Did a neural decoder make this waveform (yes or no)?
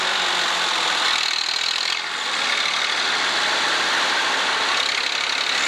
no